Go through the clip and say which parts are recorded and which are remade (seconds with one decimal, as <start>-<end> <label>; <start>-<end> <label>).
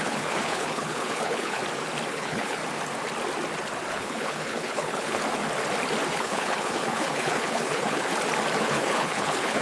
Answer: 0.0-1.6 remade; 1.6-2.1 recorded; 2.1-2.6 remade; 2.6-3.9 recorded; 3.9-5.2 remade; 5.2-6.1 recorded; 6.1-8.1 remade; 8.1-8.6 recorded; 8.6-9.6 remade